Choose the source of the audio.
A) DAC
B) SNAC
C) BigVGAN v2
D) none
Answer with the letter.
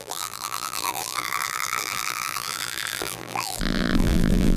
C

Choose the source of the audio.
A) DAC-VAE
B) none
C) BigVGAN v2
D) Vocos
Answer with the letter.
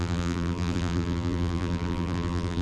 C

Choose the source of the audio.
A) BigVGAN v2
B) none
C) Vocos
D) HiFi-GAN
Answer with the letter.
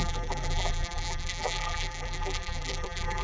A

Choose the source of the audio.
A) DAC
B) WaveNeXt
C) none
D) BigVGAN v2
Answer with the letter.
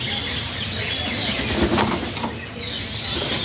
C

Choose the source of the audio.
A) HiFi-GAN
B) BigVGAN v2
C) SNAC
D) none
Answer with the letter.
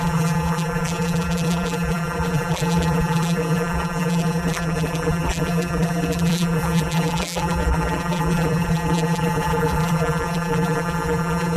B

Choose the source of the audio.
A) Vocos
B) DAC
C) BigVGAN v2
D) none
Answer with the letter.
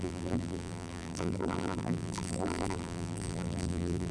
C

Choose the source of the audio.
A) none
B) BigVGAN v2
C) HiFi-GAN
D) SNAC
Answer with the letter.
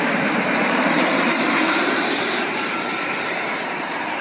B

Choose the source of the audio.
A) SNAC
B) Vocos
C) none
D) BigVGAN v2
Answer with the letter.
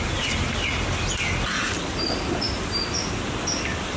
C